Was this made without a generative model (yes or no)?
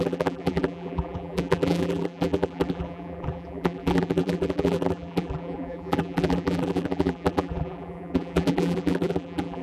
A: no